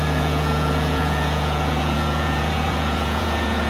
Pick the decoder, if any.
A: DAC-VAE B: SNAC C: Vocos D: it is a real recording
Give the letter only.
C